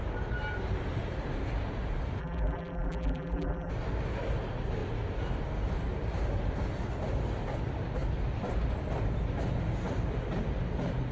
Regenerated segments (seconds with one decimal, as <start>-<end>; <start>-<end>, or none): 2.2-3.7